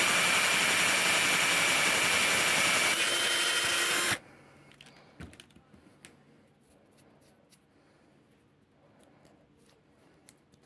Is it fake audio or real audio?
real